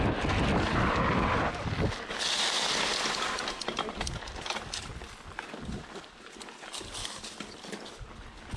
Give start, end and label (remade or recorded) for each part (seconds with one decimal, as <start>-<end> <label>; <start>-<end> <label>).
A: 0.0-8.6 recorded